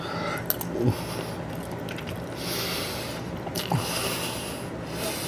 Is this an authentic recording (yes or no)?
yes